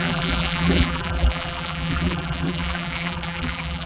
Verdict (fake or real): fake